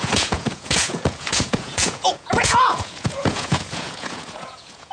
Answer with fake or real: fake